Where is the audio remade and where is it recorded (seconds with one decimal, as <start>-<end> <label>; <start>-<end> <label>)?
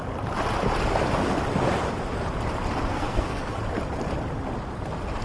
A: 0.0-2.9 recorded; 2.9-3.6 remade; 3.6-5.2 recorded